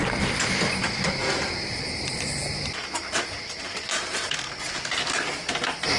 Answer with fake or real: real